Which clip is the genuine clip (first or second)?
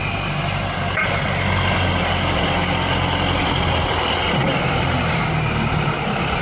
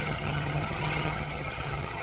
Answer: first